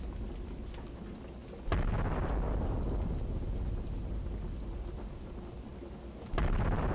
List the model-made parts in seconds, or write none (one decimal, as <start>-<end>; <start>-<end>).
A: none